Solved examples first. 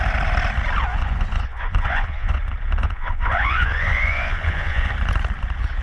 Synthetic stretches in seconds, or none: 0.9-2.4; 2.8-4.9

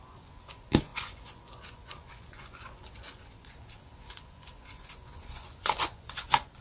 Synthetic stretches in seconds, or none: 0.0-6.6

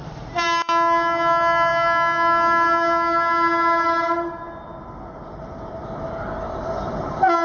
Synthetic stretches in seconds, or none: none

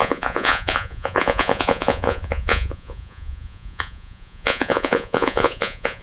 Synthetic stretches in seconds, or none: 0.0-6.0

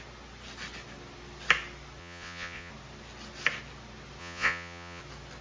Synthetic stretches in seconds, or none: 2.0-2.7; 4.2-5.0

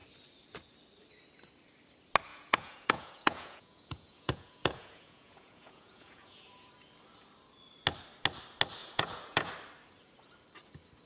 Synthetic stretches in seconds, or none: 2.3-6.7; 8.8-9.5